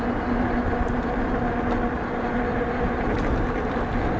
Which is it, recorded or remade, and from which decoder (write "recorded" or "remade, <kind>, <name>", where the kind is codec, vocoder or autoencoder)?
recorded